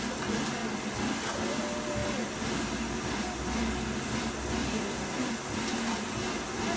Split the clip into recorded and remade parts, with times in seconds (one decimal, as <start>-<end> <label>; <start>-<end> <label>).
0.0-4.7 recorded; 4.7-5.3 remade; 5.3-6.8 recorded